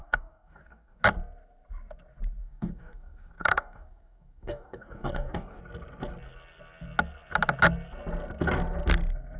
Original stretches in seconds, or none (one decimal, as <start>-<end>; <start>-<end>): 1.0-2.4; 5.6-9.4